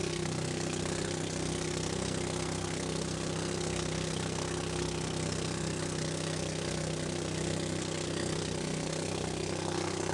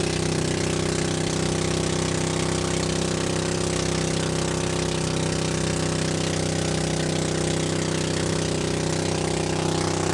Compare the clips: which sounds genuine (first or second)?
second